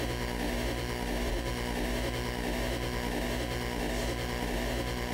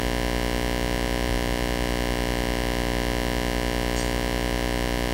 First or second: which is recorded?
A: second